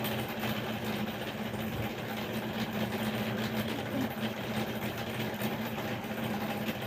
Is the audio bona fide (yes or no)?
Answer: yes